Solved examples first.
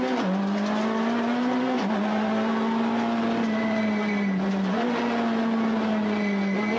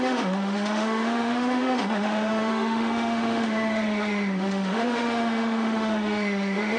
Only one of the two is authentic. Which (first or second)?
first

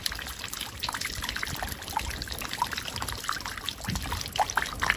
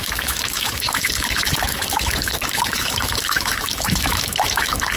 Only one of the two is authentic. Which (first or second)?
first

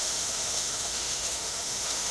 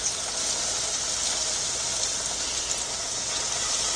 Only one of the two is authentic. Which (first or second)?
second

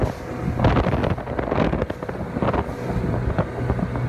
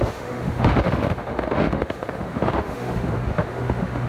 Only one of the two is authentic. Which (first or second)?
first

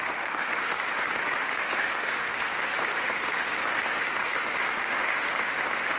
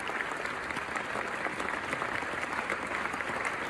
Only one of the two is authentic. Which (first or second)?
second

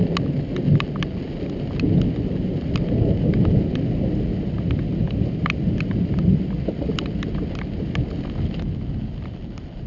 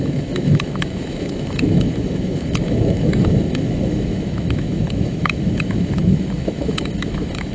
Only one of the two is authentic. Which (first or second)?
first